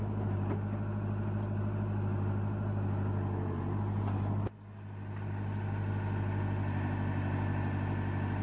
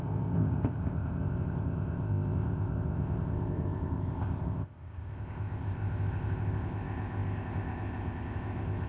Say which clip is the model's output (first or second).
second